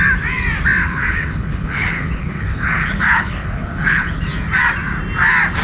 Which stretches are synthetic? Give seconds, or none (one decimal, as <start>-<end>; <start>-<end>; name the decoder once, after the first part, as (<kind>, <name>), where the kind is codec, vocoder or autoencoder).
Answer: 0.8-4.2 (codec, HILCodec)